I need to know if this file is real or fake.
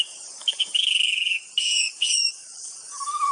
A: fake